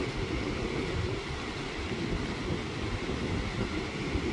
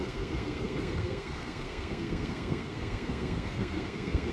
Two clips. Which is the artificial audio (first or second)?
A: second